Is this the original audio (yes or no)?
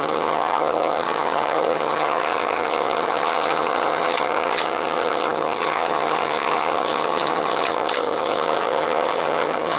no